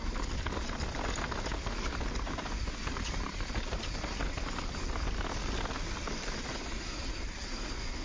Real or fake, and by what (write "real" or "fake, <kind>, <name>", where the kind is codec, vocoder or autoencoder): real